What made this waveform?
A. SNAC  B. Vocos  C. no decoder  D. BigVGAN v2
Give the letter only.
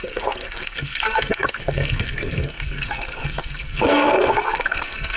A